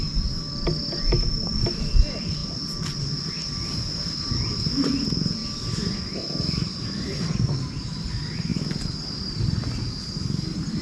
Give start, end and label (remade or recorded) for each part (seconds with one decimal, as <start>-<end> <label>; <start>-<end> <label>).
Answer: 0.0-10.8 recorded

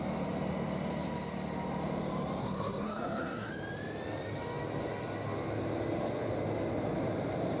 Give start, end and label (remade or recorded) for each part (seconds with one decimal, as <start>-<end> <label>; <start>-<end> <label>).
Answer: 0.0-2.4 recorded; 2.4-3.5 remade; 3.5-7.6 recorded

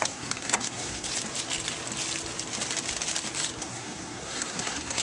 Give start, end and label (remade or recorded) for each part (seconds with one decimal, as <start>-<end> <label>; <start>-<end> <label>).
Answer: 0.0-1.1 remade; 1.1-3.6 recorded; 3.6-5.0 remade

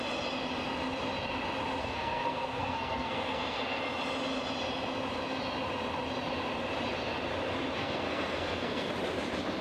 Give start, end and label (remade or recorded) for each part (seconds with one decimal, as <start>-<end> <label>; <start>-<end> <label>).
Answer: 0.0-1.8 recorded; 1.8-3.8 remade; 3.8-7.8 recorded; 7.8-8.9 remade; 8.9-9.6 recorded

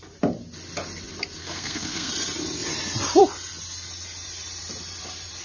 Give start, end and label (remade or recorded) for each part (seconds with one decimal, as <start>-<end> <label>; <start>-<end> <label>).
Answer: 0.0-1.4 recorded; 1.4-2.1 remade; 2.1-5.4 recorded

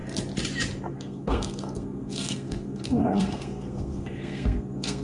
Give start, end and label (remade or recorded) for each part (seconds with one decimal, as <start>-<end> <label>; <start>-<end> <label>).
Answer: 0.0-0.9 recorded; 0.9-5.0 remade